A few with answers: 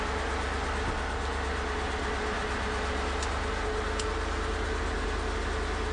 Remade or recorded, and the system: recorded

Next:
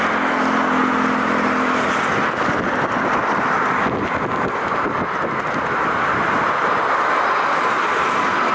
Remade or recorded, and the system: recorded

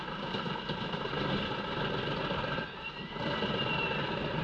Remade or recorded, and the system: recorded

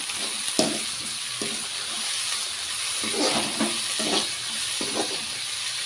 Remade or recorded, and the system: recorded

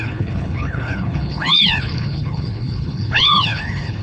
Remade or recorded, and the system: remade, codec, HILCodec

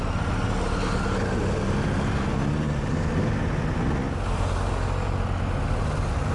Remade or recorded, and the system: recorded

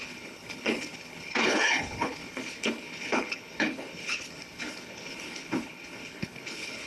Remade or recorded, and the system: remade, codec, HILCodec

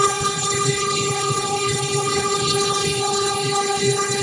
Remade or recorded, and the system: remade, codec, HILCodec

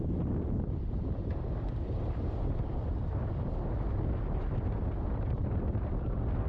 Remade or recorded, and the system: recorded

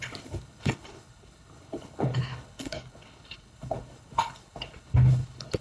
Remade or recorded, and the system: remade, codec, HILCodec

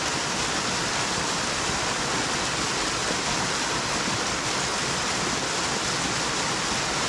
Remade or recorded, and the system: recorded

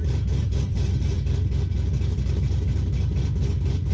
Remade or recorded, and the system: recorded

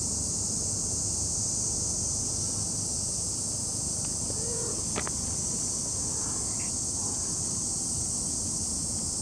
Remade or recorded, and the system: recorded